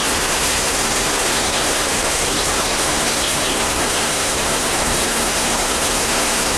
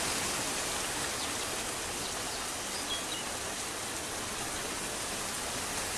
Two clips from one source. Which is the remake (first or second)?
first